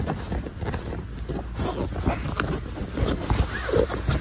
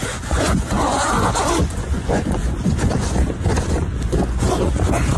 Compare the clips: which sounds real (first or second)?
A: first